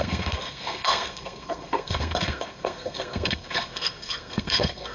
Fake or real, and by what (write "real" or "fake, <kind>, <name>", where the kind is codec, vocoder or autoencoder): fake, codec, SNAC